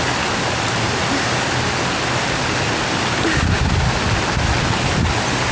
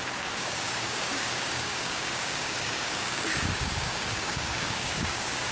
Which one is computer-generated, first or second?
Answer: second